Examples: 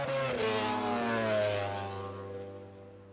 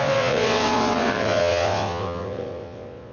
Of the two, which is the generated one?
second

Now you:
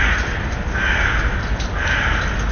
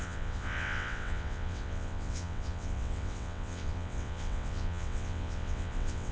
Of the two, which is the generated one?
second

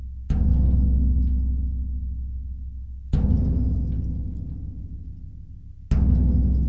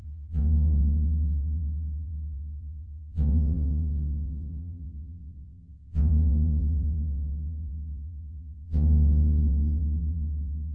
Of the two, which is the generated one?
second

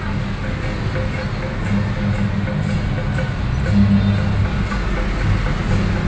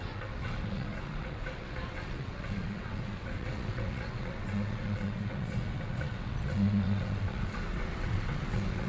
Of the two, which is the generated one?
second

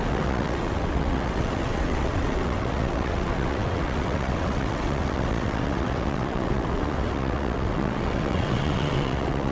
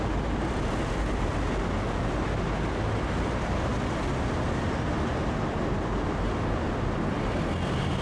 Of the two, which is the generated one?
first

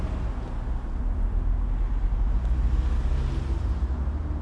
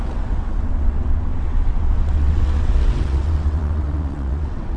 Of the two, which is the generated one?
second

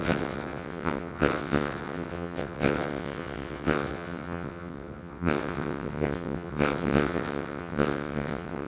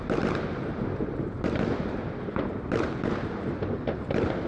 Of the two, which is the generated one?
first